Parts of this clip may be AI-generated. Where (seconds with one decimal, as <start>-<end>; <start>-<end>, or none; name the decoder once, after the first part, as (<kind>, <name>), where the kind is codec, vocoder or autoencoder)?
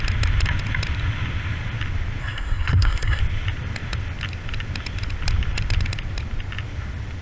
2.2-3.2 (codec, SNAC)